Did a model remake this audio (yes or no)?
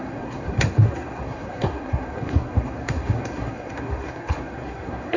yes